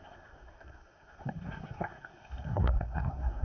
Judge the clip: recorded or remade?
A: remade